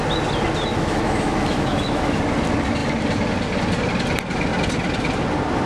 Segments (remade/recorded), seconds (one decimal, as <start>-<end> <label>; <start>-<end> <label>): 0.0-0.7 recorded; 0.7-2.2 remade; 2.2-5.7 recorded